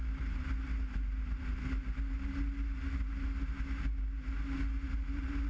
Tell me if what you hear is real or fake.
real